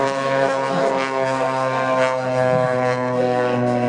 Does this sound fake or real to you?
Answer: fake